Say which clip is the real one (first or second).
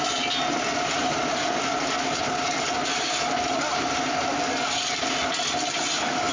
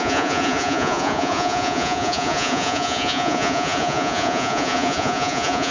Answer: first